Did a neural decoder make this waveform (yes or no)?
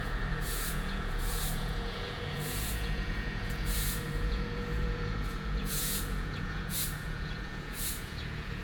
yes